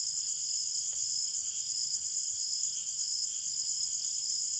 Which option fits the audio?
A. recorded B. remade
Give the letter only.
B